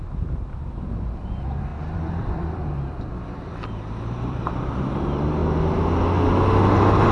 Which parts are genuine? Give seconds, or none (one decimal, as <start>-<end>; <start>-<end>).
0.0-1.7; 4.9-7.1